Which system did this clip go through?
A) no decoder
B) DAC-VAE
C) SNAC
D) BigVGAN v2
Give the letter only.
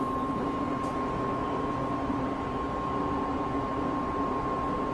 A